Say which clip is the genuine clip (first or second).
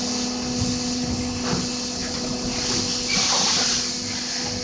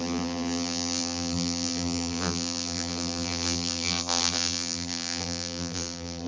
first